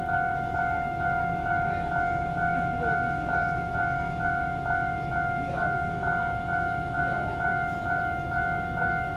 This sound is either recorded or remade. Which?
remade